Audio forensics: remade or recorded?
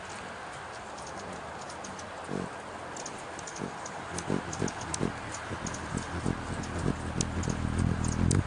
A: recorded